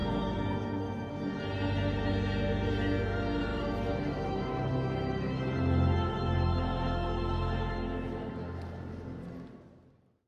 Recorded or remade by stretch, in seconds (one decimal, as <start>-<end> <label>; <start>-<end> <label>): 0.0-1.1 remade; 1.1-3.5 recorded; 3.5-8.3 remade; 8.3-10.3 recorded